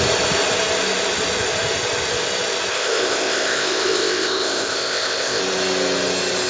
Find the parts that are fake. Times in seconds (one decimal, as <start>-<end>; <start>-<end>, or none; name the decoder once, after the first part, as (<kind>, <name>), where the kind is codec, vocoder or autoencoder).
2.7-5.4 (codec, ZipCodec)